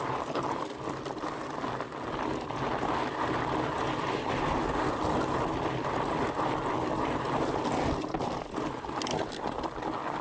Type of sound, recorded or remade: recorded